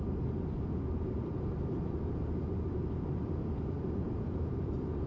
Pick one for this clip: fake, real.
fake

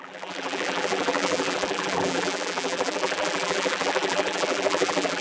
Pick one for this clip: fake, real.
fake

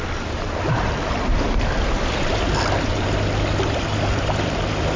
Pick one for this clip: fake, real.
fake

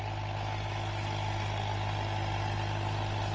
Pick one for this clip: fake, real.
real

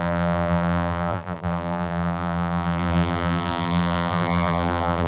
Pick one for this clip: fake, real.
fake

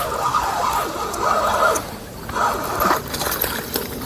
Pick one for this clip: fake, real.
real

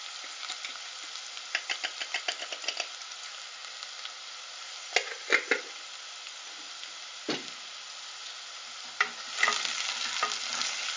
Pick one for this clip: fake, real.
real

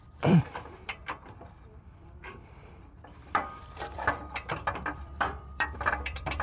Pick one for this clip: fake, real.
fake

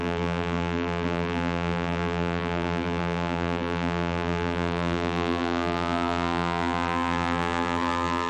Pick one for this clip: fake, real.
fake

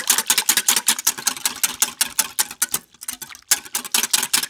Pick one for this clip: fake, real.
real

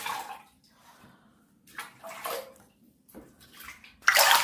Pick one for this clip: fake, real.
real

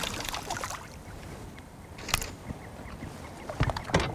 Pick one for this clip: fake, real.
fake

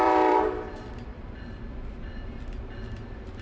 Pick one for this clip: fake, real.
fake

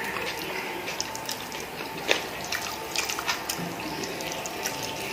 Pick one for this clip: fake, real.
real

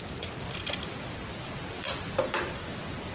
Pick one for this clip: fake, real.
real